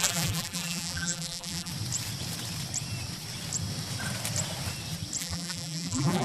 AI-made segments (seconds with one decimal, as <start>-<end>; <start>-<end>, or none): 0.0-1.7; 5.2-6.2